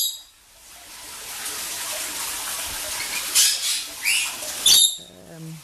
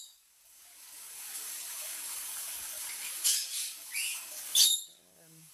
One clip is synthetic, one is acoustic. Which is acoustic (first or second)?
first